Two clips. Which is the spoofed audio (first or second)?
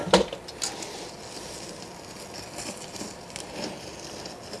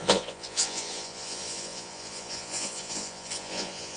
second